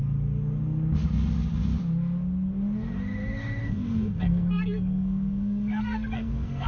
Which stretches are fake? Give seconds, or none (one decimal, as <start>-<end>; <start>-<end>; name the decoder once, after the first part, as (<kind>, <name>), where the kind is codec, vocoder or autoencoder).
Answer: 3.6-6.7 (codec, SNAC)